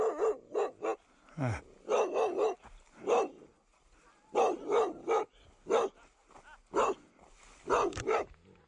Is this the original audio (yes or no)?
yes